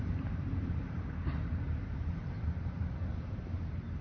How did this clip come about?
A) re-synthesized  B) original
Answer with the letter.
A